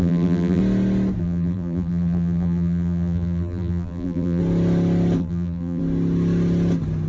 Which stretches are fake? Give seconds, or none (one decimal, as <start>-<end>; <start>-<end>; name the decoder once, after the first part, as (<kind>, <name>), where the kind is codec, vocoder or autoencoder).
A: 0.0-0.6 (vocoder, BigVGAN v2); 1.2-4.4; 5.2-5.8